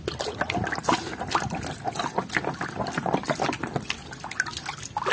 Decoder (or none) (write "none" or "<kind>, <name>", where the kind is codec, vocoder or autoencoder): none